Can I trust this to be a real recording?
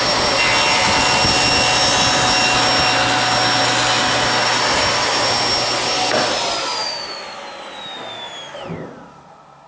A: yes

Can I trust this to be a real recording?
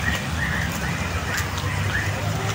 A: yes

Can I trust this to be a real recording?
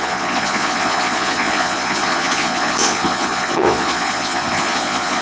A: no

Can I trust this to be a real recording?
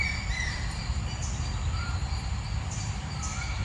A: no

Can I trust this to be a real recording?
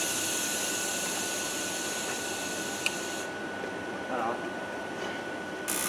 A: yes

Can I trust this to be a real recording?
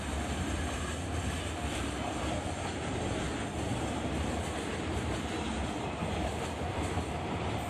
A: yes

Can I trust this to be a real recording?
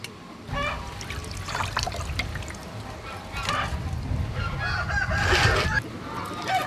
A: yes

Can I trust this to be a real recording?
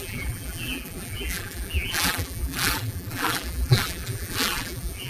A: no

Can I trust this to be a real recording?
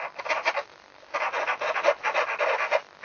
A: yes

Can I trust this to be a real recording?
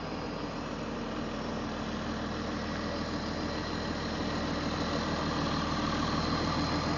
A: yes